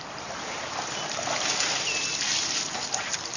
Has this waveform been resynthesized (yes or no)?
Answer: no